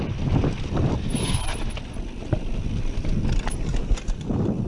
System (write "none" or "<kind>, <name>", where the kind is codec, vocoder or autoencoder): none